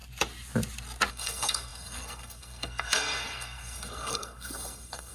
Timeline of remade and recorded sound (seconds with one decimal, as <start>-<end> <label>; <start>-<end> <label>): 0.0-1.1 recorded; 1.1-5.1 remade